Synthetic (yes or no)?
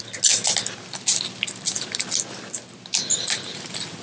no